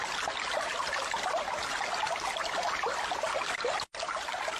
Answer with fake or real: real